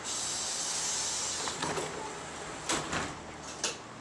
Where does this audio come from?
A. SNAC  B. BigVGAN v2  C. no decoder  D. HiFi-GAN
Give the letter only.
C